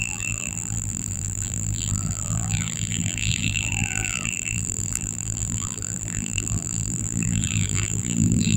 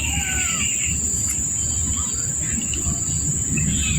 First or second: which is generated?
first